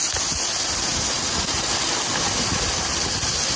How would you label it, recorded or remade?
recorded